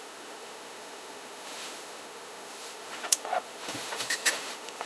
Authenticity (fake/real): fake